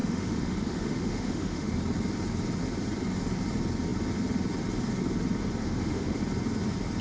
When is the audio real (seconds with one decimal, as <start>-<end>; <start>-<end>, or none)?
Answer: 1.8-5.6; 6.2-7.0